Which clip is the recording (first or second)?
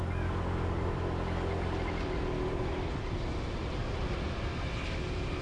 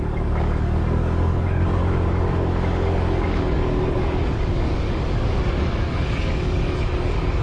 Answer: first